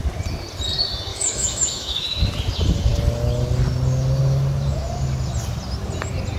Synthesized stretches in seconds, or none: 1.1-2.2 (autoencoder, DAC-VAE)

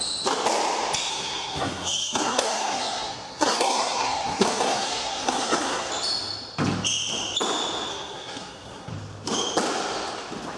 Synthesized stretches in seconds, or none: 1.1-5.9 (codec, SNAC); 7.9-8.9

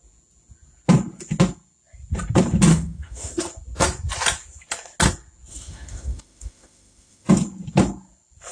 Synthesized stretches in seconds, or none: 2.7-3.4 (autoencoder, DAC-VAE); 5.5-7.3

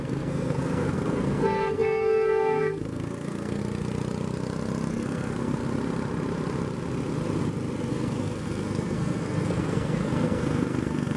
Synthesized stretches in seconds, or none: 0.0-3.6 (codec, SNAC); 4.9-5.6; 7.9-11.2

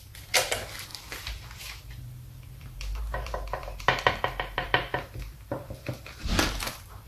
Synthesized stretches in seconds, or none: 0.0-7.1 (vocoder, BigVGAN v2)